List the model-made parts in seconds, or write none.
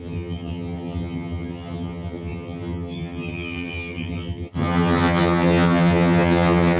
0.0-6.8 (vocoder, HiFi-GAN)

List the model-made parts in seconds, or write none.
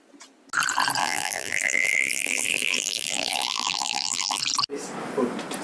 1.0-4.4 (vocoder, BigVGAN v2)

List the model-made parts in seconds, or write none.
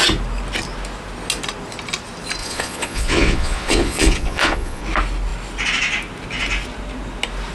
2.4-4.8 (vocoder, Vocos)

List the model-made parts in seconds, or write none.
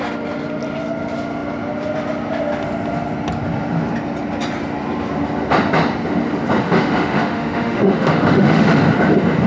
6.6-8.8 (autoencoder, DAC-VAE)